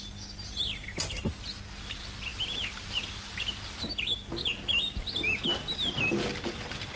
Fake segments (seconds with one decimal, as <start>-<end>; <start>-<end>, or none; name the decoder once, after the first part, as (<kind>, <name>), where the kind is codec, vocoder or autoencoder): none